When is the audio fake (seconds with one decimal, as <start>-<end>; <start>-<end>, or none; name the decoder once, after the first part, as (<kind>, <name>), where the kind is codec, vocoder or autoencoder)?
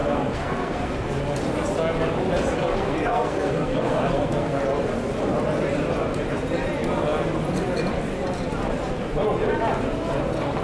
0.0-1.2 (codec, SNAC); 2.7-4.6